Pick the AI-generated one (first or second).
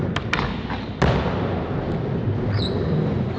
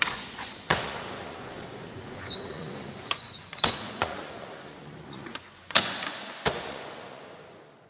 second